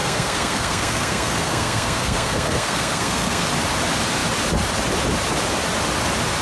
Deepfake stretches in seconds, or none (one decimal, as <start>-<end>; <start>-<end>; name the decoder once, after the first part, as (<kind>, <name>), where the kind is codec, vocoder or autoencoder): 0.0-3.5 (codec, SNAC)